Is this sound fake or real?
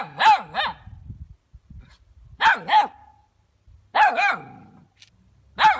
real